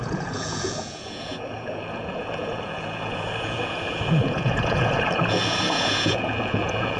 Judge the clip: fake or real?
fake